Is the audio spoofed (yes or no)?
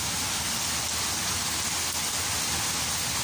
no